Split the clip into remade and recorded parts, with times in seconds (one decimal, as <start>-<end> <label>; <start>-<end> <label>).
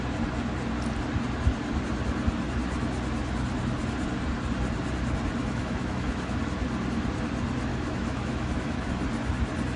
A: 0.0-5.4 recorded; 5.4-6.4 remade; 6.4-7.7 recorded; 7.7-8.9 remade; 8.9-9.8 recorded